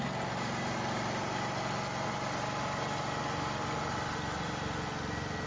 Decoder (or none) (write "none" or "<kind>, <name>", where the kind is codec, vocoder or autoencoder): none